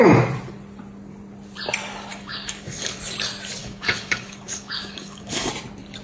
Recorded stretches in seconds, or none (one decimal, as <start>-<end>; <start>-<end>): 0.0-2.1; 3.0-3.6; 5.5-6.0